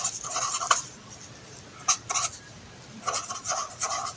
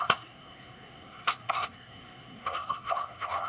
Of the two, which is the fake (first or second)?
second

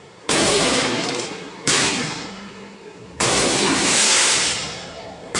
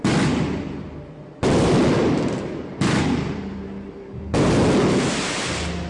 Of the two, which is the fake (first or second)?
first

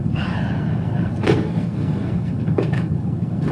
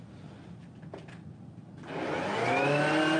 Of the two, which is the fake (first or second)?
first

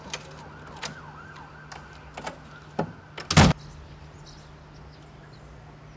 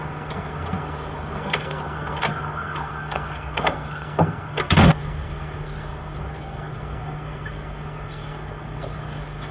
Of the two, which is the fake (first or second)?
second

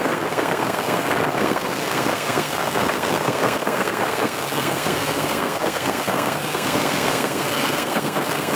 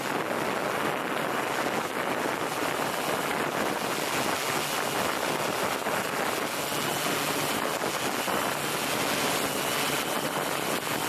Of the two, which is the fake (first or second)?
first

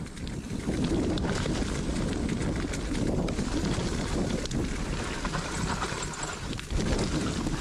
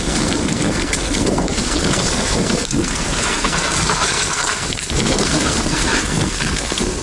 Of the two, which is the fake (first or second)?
second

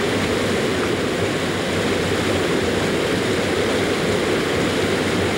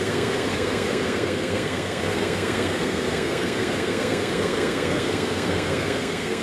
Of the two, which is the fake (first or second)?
second